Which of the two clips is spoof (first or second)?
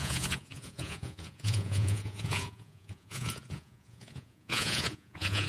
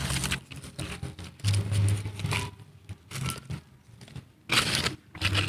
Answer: first